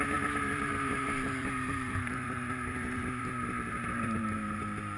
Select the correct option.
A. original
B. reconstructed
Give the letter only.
B